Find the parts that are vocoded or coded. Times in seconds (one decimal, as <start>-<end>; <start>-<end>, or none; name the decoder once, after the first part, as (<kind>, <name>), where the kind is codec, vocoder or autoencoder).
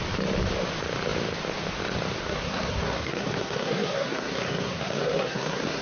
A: 2.2-5.8 (codec, SNAC)